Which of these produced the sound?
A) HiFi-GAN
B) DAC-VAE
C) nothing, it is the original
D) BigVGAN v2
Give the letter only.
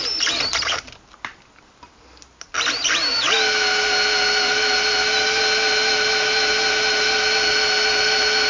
C